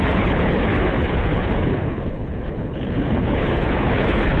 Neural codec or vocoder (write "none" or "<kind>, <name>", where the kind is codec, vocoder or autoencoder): codec, HILCodec